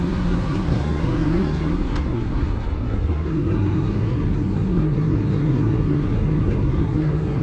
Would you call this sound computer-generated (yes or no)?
yes